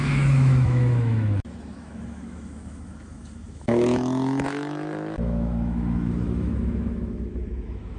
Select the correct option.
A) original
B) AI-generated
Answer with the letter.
B